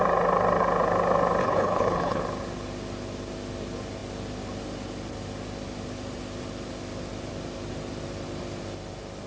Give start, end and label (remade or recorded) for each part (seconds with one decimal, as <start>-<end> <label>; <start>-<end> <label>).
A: 0.0-1.4 recorded; 1.4-2.2 remade; 2.2-9.3 recorded